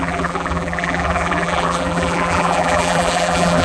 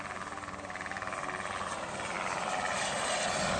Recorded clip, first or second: second